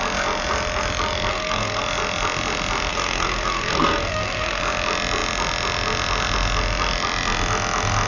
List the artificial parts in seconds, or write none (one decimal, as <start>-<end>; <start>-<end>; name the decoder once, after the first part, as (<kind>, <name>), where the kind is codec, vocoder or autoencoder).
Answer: 1.3-1.8 (codec, SNAC); 2.9-4.6